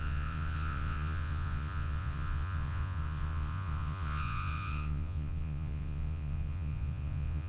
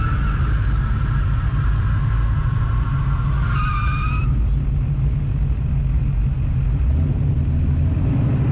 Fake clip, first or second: first